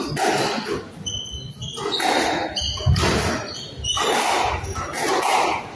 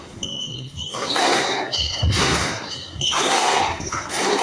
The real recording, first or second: first